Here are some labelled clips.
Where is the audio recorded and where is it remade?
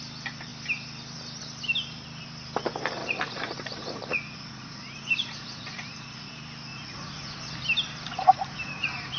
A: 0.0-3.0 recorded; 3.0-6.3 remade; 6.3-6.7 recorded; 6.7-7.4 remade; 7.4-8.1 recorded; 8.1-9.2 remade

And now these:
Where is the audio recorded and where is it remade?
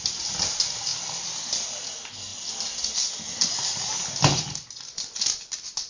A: 0.0-5.9 recorded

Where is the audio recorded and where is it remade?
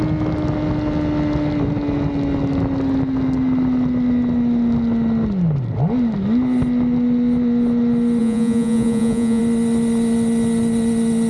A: 0.0-8.2 recorded; 8.2-9.4 remade; 9.4-11.3 recorded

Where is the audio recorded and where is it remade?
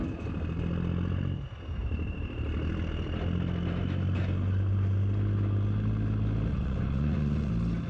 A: 0.0-6.5 recorded; 6.5-7.5 remade; 7.5-7.9 recorded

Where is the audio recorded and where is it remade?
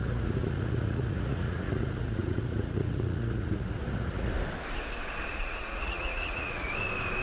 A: 0.0-4.3 remade; 4.3-5.3 recorded; 5.3-6.7 remade; 6.7-7.2 recorded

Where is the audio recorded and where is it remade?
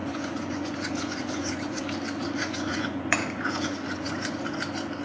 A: 0.0-1.8 remade; 1.8-2.4 recorded; 2.4-4.4 remade; 4.4-5.0 recorded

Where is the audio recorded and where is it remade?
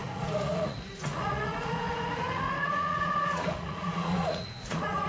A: 0.0-5.1 remade